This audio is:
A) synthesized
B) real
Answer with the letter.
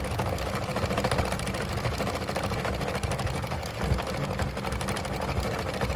B